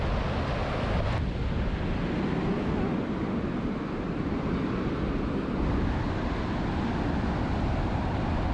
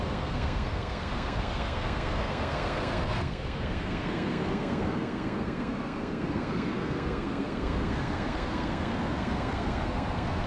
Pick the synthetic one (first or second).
second